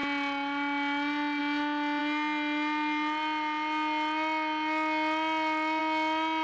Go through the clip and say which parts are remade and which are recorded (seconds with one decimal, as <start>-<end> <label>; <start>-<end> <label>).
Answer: 0.0-6.4 recorded